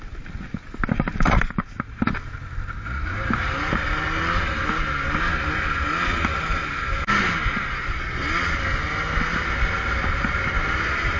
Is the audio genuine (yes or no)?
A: yes